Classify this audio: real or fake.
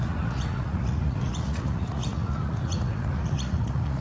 fake